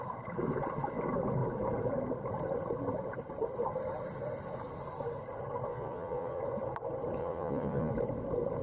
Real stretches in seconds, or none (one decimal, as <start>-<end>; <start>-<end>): 0.0-5.7; 6.4-7.2; 7.9-8.6